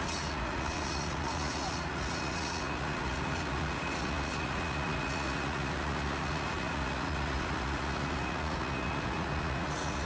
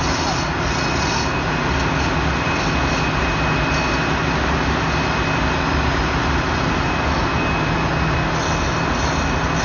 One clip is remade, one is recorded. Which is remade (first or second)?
first